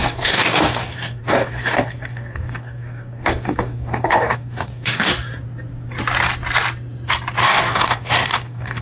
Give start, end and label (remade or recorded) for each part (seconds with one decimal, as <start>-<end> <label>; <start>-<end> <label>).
0.0-5.1 remade; 5.1-7.4 recorded; 7.4-8.8 remade